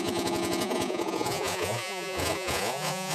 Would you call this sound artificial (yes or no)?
yes